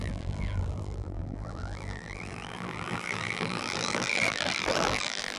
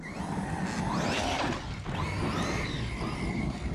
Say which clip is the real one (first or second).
second